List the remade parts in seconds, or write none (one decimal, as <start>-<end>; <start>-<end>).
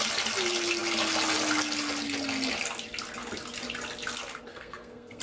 4.5-5.2